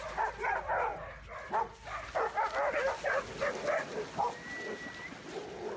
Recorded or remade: recorded